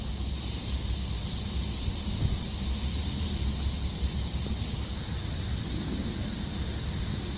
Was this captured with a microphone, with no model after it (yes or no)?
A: no